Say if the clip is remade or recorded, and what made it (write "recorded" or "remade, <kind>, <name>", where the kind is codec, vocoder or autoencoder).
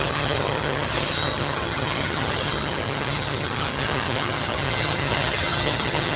remade, vocoder, HiFi-GAN